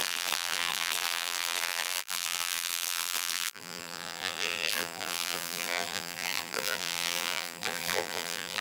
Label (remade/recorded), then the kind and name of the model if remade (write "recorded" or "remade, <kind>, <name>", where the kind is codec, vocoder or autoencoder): remade, vocoder, BigVGAN v2